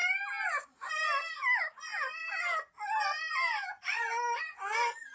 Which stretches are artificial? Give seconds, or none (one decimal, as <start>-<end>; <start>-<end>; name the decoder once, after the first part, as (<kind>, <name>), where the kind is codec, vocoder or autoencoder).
none